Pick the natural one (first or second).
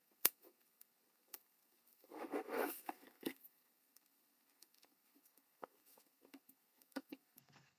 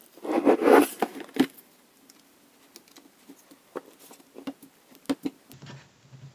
second